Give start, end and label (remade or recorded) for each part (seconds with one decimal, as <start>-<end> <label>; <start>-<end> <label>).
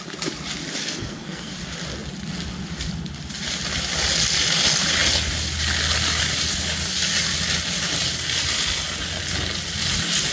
0.0-0.8 recorded; 0.8-1.5 remade; 1.5-10.3 recorded